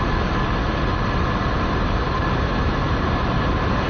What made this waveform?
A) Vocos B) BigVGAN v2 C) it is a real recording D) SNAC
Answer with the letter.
C